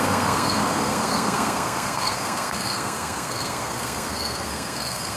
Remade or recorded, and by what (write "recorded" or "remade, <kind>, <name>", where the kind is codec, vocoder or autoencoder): remade, codec, SNAC